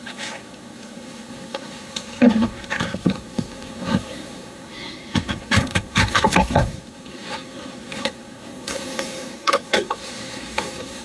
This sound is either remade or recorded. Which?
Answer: remade